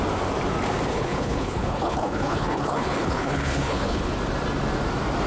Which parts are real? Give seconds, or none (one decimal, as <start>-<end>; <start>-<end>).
0.0-0.9; 4.1-5.3